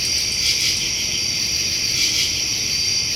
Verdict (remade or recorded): remade